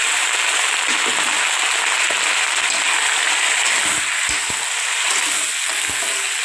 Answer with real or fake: real